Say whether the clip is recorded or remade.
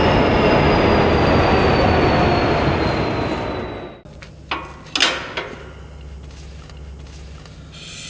recorded